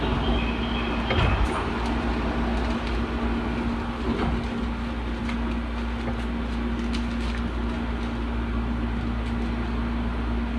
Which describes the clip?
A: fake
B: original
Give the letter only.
B